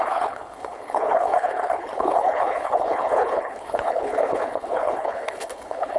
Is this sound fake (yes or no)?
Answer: yes